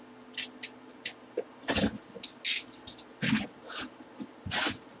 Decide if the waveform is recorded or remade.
recorded